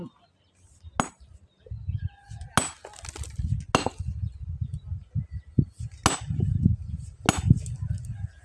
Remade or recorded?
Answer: recorded